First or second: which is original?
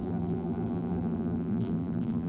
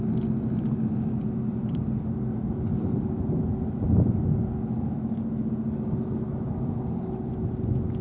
second